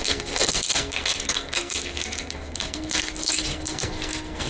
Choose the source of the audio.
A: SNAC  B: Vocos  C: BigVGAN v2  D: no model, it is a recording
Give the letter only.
A